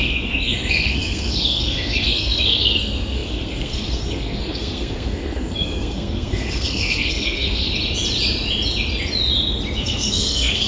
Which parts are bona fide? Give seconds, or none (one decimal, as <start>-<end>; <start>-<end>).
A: 7.7-9.8